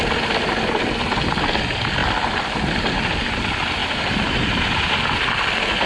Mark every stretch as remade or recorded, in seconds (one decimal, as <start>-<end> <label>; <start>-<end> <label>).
0.0-3.8 recorded; 3.8-4.9 remade; 4.9-5.9 recorded